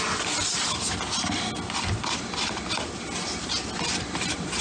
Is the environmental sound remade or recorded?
recorded